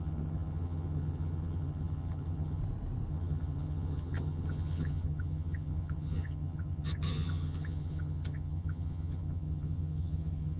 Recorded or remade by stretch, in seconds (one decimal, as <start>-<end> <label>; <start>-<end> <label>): 0.0-2.6 remade; 2.6-3.1 recorded; 3.1-10.6 remade